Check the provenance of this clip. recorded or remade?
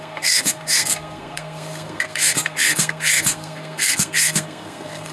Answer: remade